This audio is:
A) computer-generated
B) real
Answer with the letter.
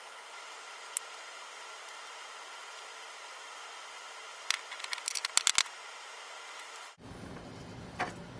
B